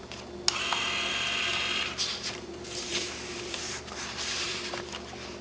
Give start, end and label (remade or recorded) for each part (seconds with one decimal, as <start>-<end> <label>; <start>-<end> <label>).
0.0-1.5 recorded; 1.5-4.7 remade; 4.7-5.4 recorded